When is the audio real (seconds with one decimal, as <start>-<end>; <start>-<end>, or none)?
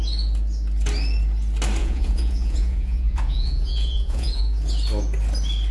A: 0.0-1.8; 4.4-5.7